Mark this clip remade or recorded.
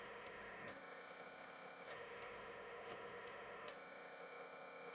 remade